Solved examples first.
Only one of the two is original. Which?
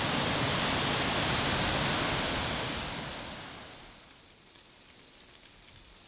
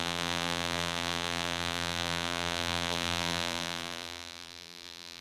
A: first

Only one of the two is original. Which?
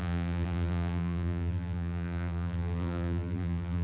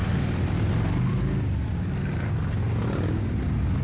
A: second